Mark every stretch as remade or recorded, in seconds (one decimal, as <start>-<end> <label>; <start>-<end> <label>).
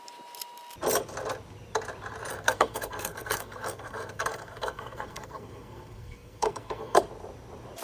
0.0-2.3 recorded; 2.3-7.0 remade; 7.0-7.8 recorded